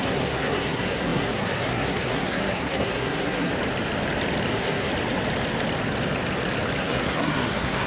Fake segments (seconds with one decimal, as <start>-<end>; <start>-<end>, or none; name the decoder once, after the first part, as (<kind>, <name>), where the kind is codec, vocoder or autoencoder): 0.0-3.5 (codec, SNAC); 4.5-4.9; 6.8-7.9

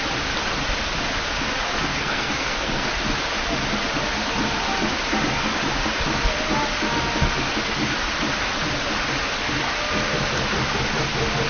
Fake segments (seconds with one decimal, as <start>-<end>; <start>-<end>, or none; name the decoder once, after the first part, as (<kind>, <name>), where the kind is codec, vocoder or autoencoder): 1.9-2.9 (codec, SNAC)